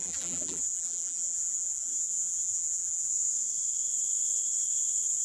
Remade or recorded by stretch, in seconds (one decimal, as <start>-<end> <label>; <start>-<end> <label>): 0.0-3.1 remade; 3.1-5.2 recorded